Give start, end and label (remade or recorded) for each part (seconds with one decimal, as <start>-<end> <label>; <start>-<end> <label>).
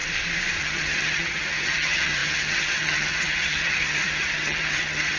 0.0-0.6 recorded; 0.6-5.2 remade